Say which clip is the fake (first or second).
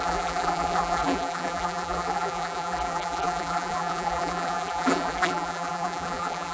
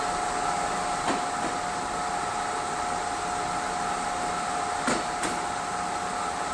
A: first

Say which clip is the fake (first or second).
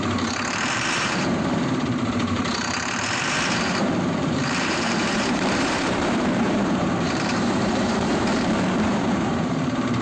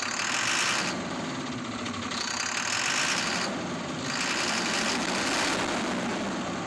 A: first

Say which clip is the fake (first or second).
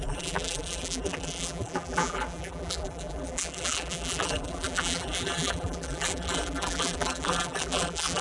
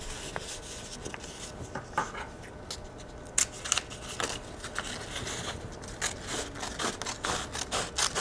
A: first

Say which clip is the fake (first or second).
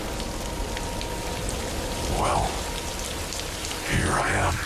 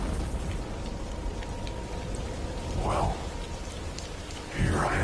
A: second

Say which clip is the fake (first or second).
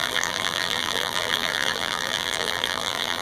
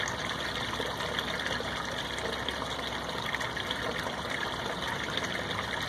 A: first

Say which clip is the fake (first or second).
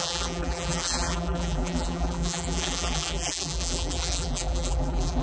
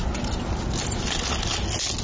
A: first